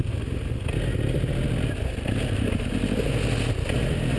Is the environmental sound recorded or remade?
recorded